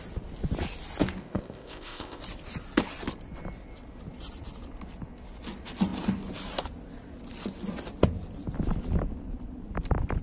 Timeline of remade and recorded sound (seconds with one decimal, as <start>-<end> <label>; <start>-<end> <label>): 0.0-1.2 recorded; 1.2-2.2 remade; 2.2-10.2 recorded